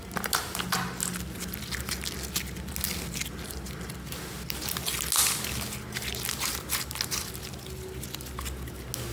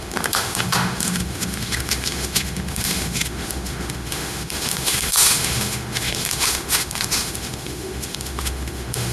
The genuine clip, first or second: first